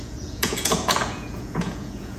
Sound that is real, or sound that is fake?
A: fake